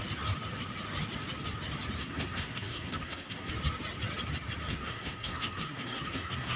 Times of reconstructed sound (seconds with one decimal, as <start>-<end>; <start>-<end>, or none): 2.0-3.5; 4.7-6.6